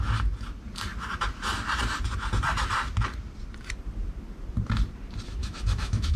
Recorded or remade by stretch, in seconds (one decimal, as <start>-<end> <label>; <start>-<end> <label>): 0.0-5.4 recorded; 5.4-6.2 remade